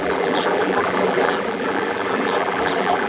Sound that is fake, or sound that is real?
fake